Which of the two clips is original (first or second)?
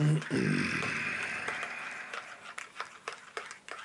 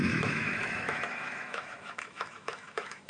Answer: first